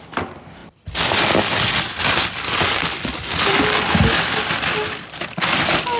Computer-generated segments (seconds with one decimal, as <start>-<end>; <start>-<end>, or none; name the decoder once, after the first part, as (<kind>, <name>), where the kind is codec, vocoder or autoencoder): none